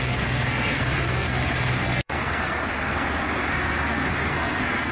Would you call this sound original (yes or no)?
no